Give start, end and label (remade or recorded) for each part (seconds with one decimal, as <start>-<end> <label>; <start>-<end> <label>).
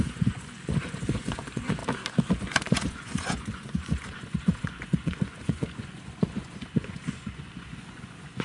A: 0.0-1.8 remade; 1.8-2.4 recorded; 2.4-8.4 remade